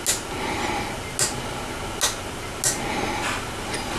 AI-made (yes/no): no